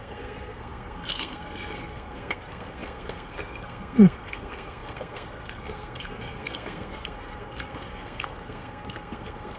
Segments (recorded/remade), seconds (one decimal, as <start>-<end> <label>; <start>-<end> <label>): 0.0-9.6 remade